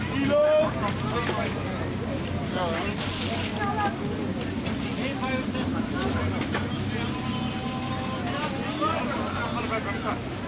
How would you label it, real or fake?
real